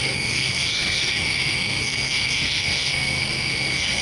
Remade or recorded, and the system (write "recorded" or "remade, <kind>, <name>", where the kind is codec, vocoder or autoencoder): remade, codec, SNAC